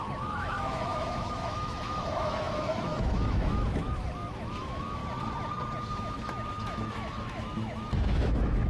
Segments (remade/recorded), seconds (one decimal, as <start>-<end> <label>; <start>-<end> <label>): 0.0-5.0 remade; 5.0-5.9 recorded; 5.9-8.7 remade

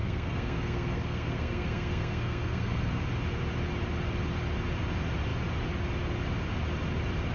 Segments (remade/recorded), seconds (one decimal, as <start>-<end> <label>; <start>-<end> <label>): 0.0-3.0 remade; 3.0-7.3 recorded

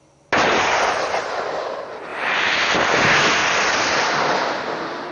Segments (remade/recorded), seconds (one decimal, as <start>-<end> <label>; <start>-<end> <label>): 0.0-2.1 recorded; 2.1-2.7 remade; 2.7-3.4 recorded; 3.4-4.1 remade; 4.1-5.1 recorded

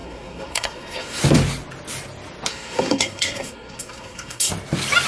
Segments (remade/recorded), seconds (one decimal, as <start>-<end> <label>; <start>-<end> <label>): 0.0-1.2 remade; 1.2-2.5 recorded; 2.5-4.5 remade; 4.5-5.1 recorded

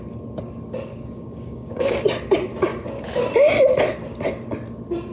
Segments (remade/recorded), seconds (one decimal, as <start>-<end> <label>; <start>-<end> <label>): 0.0-0.9 recorded; 0.9-2.0 remade; 2.0-5.1 recorded

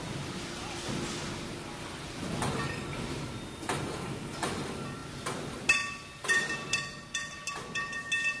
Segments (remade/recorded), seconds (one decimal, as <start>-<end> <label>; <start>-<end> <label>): 0.0-8.4 recorded

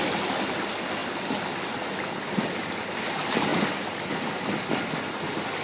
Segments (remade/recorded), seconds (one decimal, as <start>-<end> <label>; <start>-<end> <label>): 0.0-5.6 recorded

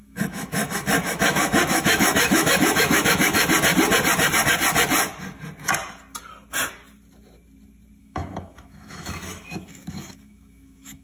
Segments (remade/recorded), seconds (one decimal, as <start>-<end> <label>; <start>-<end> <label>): 0.0-3.4 remade; 3.4-8.0 recorded; 8.0-11.0 remade